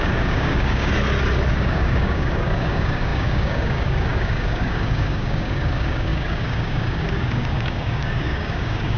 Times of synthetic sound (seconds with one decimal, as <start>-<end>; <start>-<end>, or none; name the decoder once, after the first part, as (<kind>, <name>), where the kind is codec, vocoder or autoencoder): 0.0-0.9 (codec, DAC); 1.5-9.0